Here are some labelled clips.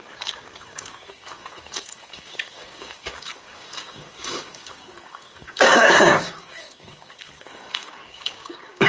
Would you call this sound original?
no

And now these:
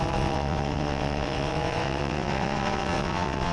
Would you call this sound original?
no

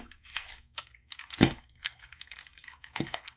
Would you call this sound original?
no